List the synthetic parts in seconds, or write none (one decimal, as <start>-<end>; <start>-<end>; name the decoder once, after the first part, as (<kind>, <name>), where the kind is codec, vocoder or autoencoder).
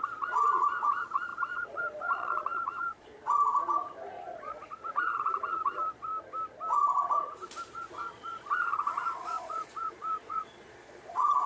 0.0-3.1 (vocoder, Vocos); 4.3-6.1; 7.7-11.5